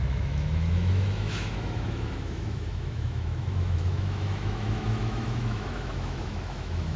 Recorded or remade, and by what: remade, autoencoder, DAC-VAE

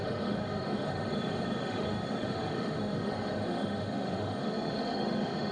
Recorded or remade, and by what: remade, autoencoder, DAC-VAE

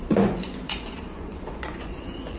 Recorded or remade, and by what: remade, vocoder, Vocos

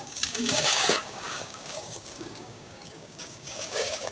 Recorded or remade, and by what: remade, codec, DAC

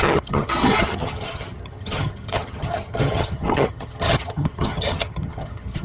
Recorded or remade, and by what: remade, vocoder, HiFi-GAN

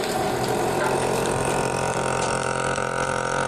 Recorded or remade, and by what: remade, vocoder, BigVGAN v2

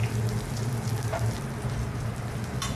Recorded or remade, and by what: recorded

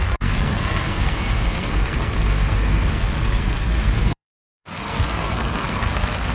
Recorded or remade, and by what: remade, codec, SNAC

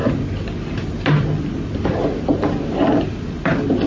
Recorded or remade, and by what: recorded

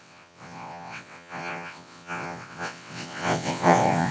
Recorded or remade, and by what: remade, vocoder, WaveNeXt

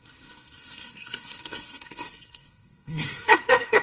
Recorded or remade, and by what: remade, codec, SNAC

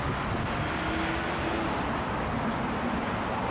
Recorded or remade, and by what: recorded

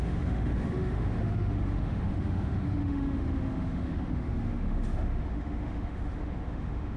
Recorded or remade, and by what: remade, autoencoder, DAC-VAE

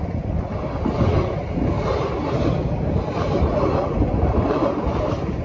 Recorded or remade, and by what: recorded